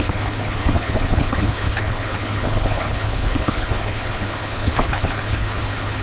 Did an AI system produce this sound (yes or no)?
yes